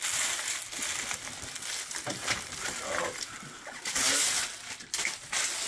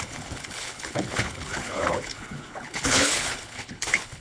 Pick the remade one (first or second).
second